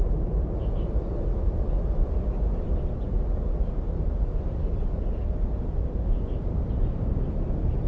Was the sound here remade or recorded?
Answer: recorded